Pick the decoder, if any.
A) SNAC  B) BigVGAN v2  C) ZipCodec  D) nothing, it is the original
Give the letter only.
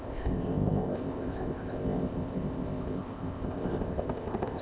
C